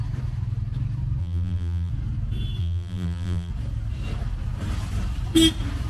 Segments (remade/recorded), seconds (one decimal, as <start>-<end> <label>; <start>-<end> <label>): 0.0-1.2 recorded; 1.2-1.9 remade; 1.9-2.6 recorded; 2.6-3.5 remade; 3.5-5.9 recorded